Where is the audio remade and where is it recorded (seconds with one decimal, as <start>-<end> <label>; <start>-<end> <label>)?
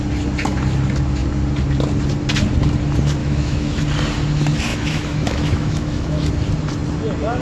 0.0-3.2 recorded; 3.2-3.8 remade; 3.8-4.7 recorded; 4.7-6.3 remade; 6.3-7.4 recorded